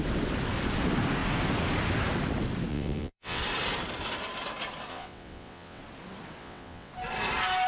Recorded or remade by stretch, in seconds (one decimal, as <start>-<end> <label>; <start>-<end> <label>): 0.0-2.7 recorded; 2.7-3.4 remade; 3.4-4.9 recorded; 4.9-5.8 remade; 5.8-6.4 recorded; 6.4-6.9 remade; 6.9-7.7 recorded

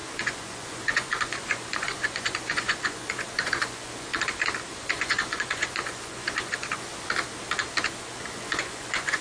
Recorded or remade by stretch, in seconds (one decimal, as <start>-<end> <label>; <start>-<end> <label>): 0.0-4.1 remade; 4.1-4.7 recorded; 4.7-6.9 remade; 6.9-8.0 recorded; 8.0-9.2 remade

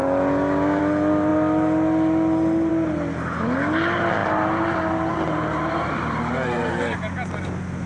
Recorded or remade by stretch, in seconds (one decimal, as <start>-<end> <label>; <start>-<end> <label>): 0.0-7.9 recorded

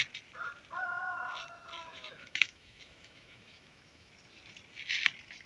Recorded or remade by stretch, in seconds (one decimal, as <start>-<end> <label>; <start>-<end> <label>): 0.0-1.9 recorded; 1.9-4.1 remade; 4.1-5.5 recorded

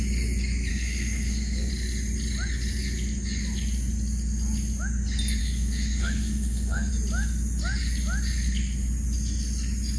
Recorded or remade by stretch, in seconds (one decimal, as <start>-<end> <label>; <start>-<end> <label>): 0.0-0.7 recorded; 0.7-1.7 remade; 1.7-5.4 recorded; 5.4-6.9 remade; 6.9-10.0 recorded

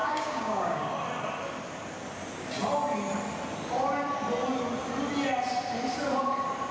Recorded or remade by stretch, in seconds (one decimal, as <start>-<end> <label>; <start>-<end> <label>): 0.0-0.9 remade; 0.9-6.7 recorded

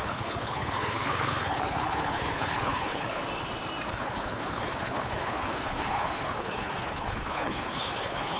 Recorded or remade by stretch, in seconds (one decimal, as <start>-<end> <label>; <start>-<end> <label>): 0.0-3.2 remade; 3.2-3.9 recorded; 3.9-8.4 remade